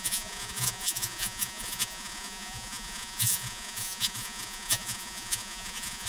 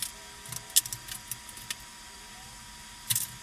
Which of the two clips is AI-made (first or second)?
first